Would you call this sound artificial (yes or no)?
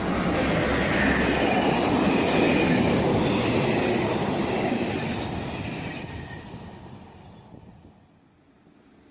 no